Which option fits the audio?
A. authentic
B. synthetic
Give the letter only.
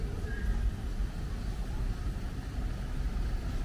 A